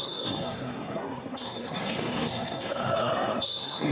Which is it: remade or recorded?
remade